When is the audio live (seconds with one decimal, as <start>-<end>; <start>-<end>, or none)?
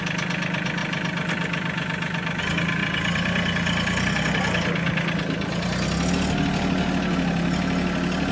0.0-8.3